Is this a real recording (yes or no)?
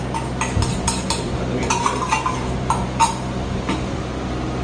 yes